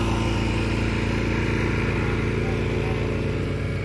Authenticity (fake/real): real